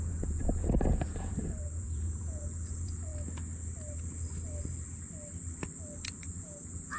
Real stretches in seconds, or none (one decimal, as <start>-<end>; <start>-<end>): 3.1-6.3

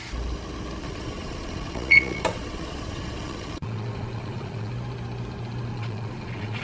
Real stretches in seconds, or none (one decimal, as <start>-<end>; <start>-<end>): 0.0-0.8; 4.7-5.7

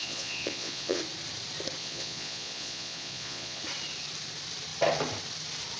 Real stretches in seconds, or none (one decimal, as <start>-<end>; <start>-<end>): 1.0-1.8; 3.6-5.8

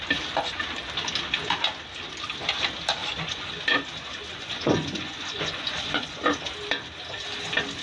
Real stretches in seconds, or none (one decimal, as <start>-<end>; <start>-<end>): 0.0-3.0; 3.5-4.3; 6.2-7.8

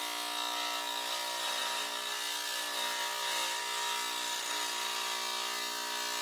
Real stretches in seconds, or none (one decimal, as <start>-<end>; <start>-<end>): 0.0-6.2

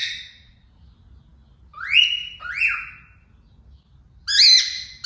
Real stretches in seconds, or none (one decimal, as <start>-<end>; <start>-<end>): 0.7-5.1